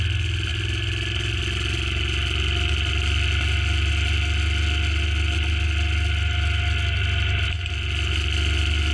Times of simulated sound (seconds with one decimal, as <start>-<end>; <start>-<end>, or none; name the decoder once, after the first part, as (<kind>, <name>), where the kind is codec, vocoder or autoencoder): none